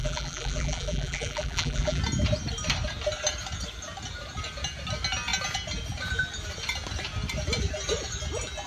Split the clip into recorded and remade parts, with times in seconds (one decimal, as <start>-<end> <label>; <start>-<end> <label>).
0.0-2.0 remade; 2.0-8.7 recorded